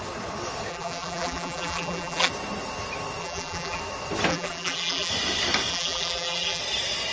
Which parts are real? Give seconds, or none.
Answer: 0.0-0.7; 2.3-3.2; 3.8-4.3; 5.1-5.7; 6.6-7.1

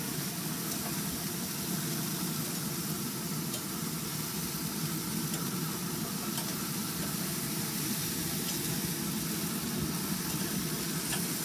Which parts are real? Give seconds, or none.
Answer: 0.0-2.8; 4.0-6.5; 8.3-11.4